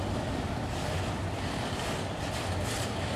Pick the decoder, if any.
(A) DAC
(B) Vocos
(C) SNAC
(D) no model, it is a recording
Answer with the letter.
D